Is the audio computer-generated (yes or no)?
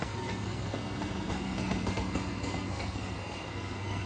yes